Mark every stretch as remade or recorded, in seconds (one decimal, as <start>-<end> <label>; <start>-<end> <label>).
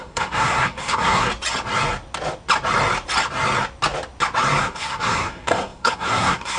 0.0-1.3 remade; 1.3-4.6 recorded; 4.6-6.6 remade